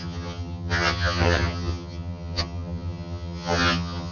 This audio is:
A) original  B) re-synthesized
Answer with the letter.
B